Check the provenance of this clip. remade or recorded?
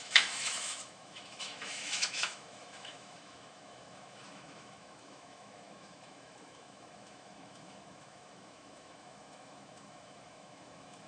remade